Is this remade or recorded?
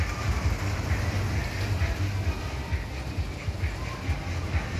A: recorded